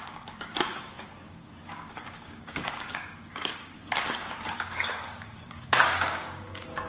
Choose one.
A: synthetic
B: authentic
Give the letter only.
A